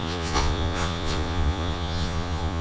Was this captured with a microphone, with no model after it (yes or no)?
no